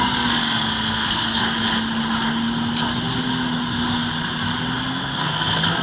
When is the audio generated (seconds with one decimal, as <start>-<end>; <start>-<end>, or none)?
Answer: 0.0-1.4; 4.9-5.8